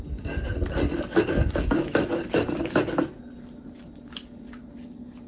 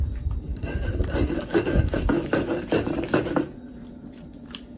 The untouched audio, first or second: first